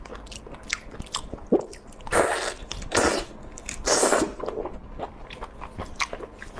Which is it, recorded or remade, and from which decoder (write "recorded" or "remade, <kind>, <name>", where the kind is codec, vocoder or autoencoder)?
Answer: recorded